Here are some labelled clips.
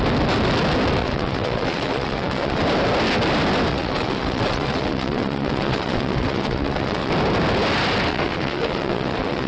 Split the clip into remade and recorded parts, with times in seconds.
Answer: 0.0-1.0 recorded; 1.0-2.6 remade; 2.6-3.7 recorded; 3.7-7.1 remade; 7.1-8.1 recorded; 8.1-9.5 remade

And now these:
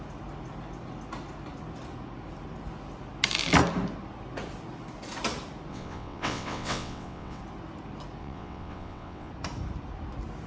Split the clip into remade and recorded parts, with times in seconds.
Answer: 0.0-5.7 recorded; 5.7-7.4 remade; 7.4-8.2 recorded; 8.2-9.3 remade; 9.3-10.5 recorded

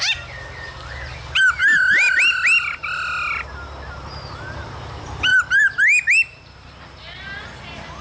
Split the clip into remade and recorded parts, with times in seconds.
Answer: 0.0-8.0 recorded

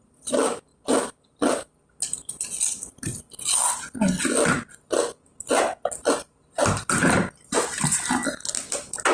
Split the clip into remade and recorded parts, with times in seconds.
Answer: 0.0-9.1 recorded